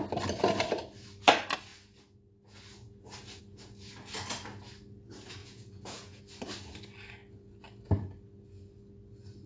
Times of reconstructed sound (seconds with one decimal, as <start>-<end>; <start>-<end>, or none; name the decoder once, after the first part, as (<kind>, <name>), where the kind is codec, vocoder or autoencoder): 5.4-6.2 (vocoder, Vocos)